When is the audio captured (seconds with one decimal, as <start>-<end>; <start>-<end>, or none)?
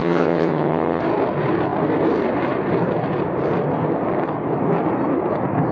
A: 1.0-5.7